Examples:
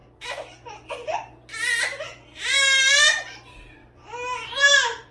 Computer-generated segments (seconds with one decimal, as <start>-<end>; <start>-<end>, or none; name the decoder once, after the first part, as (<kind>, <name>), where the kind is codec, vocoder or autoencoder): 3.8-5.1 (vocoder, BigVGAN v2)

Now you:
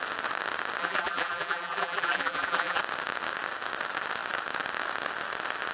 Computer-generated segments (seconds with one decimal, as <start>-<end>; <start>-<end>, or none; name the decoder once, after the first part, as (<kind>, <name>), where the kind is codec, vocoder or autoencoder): 0.8-2.8 (vocoder, BigVGAN v2)

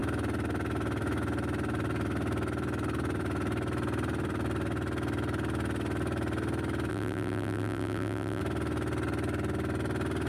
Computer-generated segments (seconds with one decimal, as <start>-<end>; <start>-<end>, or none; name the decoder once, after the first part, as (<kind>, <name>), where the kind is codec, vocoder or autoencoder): 6.9-8.4 (vocoder, BigVGAN v2)

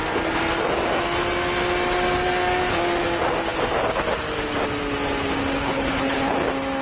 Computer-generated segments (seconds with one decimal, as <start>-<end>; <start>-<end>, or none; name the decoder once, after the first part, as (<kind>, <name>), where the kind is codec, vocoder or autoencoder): 5.6-6.3 (codec, HILCodec)